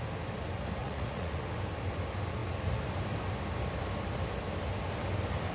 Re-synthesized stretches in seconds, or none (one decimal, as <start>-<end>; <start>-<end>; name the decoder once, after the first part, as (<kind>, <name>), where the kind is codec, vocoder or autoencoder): 0.8-1.4 (vocoder, Vocos)

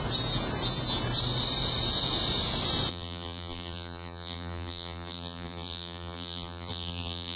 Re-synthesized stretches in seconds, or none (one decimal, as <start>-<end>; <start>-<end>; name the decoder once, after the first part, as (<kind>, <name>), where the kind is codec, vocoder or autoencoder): 2.9-7.4 (vocoder, BigVGAN v2)

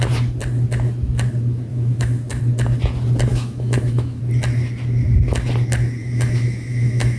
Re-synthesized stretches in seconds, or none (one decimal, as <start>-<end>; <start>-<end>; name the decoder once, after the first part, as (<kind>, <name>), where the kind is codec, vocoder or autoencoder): 1.7-2.4 (autoencoder, DAC-VAE); 3.3-4.2; 6.0-7.2